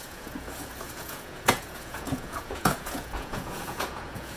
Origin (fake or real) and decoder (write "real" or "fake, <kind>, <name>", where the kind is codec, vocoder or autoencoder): fake, vocoder, Vocos